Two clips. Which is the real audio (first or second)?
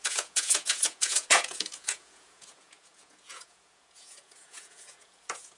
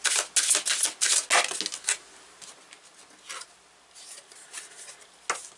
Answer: second